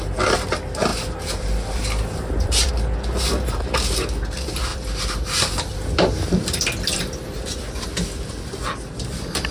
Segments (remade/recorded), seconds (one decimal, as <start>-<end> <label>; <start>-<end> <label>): 0.0-0.9 recorded; 0.9-2.7 remade; 2.7-4.7 recorded; 4.7-5.7 remade; 5.7-9.5 recorded